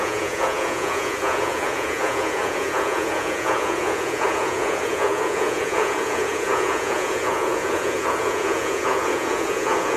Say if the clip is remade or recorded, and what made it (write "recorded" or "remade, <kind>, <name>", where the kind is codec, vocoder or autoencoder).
remade, vocoder, Vocos